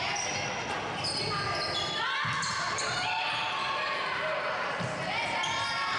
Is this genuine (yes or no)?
yes